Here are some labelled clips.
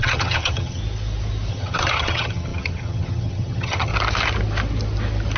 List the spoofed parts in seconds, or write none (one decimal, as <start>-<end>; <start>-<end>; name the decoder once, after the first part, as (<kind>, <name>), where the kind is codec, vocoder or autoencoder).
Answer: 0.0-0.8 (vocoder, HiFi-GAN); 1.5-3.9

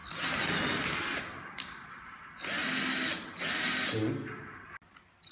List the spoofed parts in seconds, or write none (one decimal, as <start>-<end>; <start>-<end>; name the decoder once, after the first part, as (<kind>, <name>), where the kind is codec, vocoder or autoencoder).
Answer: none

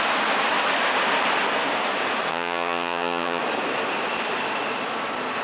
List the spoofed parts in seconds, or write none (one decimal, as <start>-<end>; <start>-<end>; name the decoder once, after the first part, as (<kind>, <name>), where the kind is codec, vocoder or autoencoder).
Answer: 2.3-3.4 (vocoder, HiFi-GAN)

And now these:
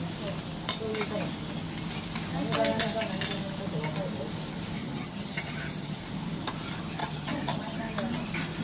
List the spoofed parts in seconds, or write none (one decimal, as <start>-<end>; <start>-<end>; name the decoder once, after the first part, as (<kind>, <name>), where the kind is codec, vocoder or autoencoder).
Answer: 4.8-6.0 (vocoder, HiFi-GAN); 7.0-7.8

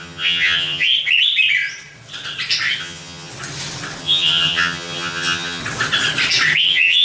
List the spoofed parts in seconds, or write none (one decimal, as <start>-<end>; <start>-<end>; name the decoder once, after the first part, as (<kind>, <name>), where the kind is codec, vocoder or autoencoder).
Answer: 0.0-0.9 (vocoder, HiFi-GAN); 2.8-3.3; 4.0-5.6; 6.6-7.0

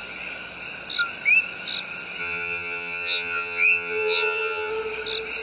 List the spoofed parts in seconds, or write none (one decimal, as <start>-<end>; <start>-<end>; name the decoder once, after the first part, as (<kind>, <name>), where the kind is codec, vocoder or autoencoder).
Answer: 2.2-4.7 (vocoder, HiFi-GAN)

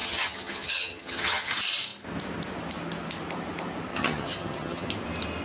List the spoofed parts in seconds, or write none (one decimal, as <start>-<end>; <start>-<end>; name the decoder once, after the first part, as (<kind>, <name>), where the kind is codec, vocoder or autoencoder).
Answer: 0.0-1.5 (vocoder, HiFi-GAN); 3.9-4.9